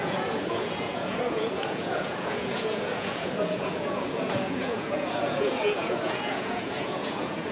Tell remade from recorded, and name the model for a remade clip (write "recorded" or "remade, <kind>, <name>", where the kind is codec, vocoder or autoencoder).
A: remade, vocoder, Vocos